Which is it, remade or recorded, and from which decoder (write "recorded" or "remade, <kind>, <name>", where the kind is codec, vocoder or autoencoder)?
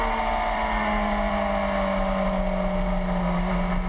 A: recorded